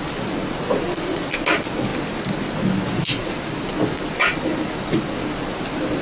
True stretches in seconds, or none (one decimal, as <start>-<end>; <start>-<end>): 0.0-4.3; 5.1-6.0